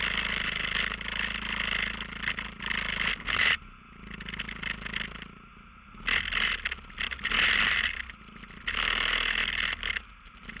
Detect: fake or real real